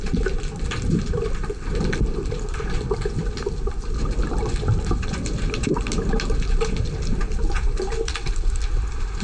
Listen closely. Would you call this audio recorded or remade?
recorded